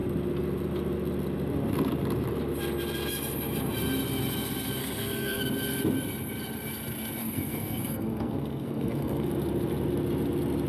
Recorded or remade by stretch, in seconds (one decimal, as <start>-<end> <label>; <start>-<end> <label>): 0.0-4.8 recorded; 4.8-5.4 remade; 5.4-7.2 recorded; 7.2-9.3 remade; 9.3-10.7 recorded